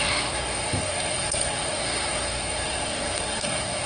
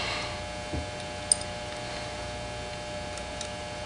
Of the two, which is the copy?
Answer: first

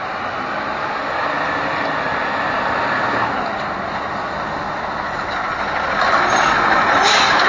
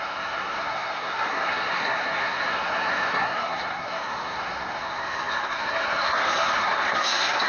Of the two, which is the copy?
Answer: second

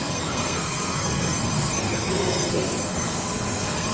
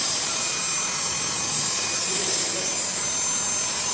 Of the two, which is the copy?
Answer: first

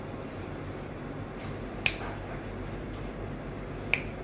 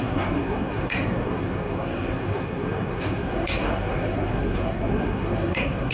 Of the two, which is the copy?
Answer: second